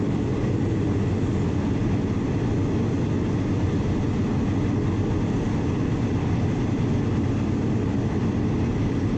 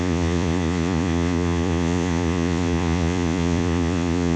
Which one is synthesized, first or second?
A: second